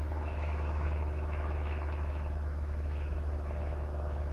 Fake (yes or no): yes